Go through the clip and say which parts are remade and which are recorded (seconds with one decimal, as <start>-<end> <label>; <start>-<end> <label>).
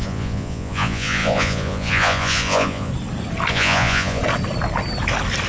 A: 0.0-2.9 remade; 2.9-3.5 recorded; 3.5-4.2 remade; 4.2-5.5 recorded